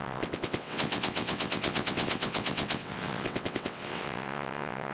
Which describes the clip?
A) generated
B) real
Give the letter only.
A